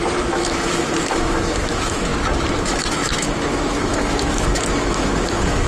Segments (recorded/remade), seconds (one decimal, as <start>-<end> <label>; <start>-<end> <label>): 0.0-2.1 remade; 2.1-2.6 recorded; 2.6-5.7 remade